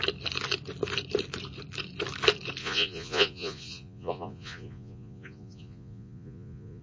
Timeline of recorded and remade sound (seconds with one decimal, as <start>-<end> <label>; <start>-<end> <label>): 0.0-2.6 recorded; 2.6-6.8 remade